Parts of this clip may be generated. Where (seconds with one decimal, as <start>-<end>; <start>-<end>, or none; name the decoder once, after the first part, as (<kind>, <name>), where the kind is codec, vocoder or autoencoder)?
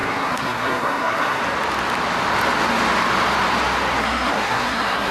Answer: 0.0-1.4 (codec, SNAC); 4.0-5.1